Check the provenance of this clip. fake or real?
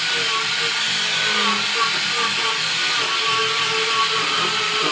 real